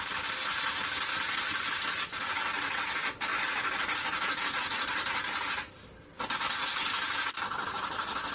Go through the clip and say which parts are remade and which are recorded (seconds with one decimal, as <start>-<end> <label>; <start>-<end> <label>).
0.0-1.1 recorded; 1.1-2.3 remade; 2.3-8.3 recorded